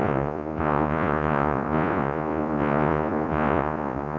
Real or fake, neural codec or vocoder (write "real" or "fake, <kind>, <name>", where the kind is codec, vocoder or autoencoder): fake, vocoder, Vocos